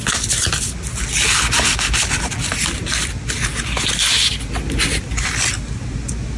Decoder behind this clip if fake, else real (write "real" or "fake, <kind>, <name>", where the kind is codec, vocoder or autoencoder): real